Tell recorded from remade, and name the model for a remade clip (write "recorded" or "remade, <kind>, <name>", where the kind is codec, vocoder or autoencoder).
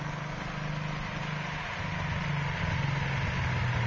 recorded